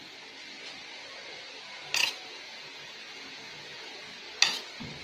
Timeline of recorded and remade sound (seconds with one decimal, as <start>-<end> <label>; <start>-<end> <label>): 0.0-2.0 recorded; 2.0-3.8 remade; 3.8-5.0 recorded